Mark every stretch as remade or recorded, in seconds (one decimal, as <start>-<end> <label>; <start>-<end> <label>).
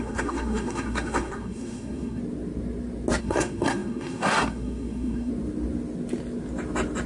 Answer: 0.0-2.2 remade; 2.2-3.2 recorded; 3.2-5.3 remade; 5.3-7.1 recorded